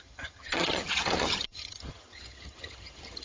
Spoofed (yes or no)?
yes